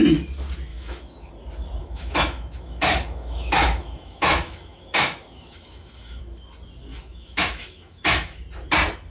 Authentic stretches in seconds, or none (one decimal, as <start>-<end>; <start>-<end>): 0.0-0.7; 1.3-1.8; 6.2-6.9; 8.4-9.1

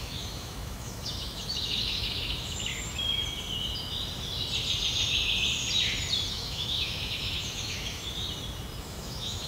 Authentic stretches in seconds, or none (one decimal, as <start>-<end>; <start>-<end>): 2.7-6.3; 8.0-8.8

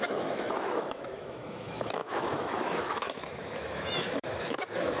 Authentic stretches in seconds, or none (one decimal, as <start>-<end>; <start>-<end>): none

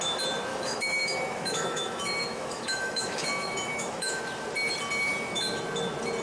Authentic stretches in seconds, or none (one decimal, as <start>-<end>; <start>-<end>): 0.0-0.5; 4.2-5.1; 5.6-6.2

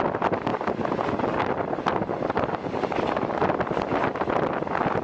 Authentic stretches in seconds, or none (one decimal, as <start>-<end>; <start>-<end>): 0.0-5.0

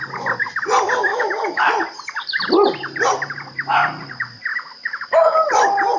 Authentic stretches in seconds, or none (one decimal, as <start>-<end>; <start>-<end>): 0.0-1.1; 1.7-4.5; 5.5-6.0